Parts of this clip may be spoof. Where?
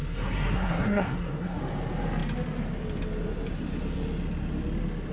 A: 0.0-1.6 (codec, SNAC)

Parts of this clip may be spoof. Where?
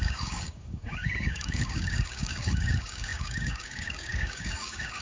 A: 0.0-5.0 (codec, DAC)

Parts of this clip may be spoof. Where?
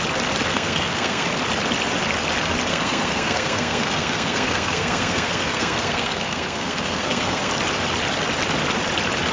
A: 0.4-1.3 (codec, SNAC); 2.7-7.5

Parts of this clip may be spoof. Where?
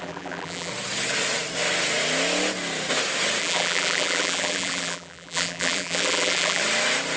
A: 0.0-0.7 (vocoder, BigVGAN v2); 3.4-6.6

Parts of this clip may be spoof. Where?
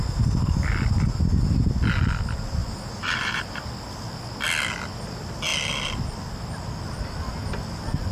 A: 2.6-3.6 (vocoder, BigVGAN v2)